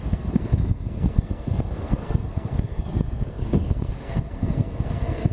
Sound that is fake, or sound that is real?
fake